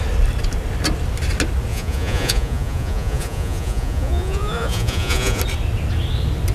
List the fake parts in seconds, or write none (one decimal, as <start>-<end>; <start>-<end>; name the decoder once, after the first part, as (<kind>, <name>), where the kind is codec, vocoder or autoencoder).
1.7-5.4 (vocoder, Vocos)